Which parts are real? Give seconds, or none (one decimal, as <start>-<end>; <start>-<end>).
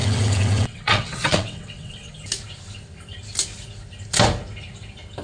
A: 2.1-5.2